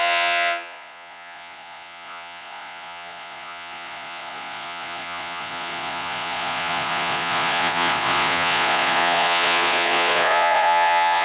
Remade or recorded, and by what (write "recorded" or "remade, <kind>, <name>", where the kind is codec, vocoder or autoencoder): remade, vocoder, Vocos